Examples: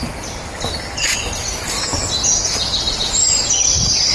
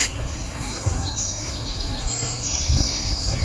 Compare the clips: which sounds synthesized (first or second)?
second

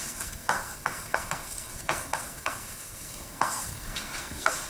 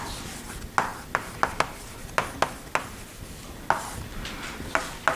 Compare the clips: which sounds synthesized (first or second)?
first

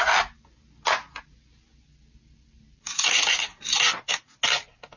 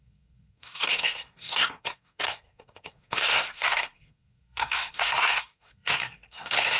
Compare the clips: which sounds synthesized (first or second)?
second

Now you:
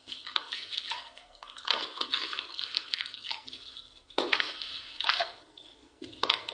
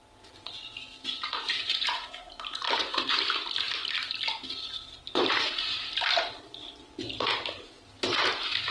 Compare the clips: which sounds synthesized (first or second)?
first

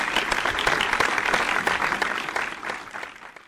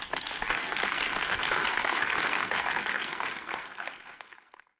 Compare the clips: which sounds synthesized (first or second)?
second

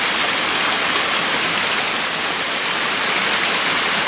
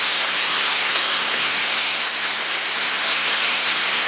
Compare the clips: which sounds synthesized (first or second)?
second